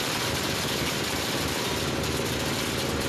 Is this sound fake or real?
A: fake